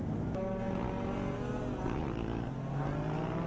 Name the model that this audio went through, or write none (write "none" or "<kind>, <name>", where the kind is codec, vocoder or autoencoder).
none